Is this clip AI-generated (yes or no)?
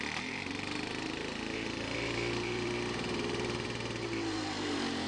yes